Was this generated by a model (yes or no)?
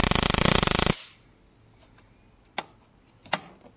no